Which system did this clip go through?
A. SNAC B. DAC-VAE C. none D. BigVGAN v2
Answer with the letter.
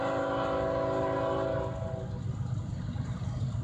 C